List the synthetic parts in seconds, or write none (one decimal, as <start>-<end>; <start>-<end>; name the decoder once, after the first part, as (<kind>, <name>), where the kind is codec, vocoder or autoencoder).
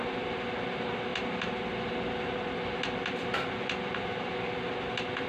none